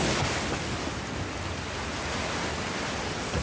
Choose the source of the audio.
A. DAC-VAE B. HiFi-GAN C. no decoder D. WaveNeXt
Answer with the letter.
C